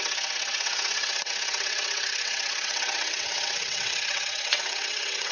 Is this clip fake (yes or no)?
yes